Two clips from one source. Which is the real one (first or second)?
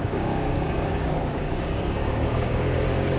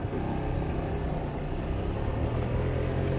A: second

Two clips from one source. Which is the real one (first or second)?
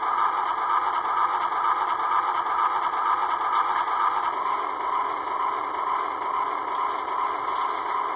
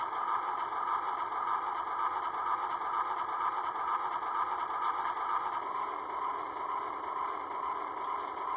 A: first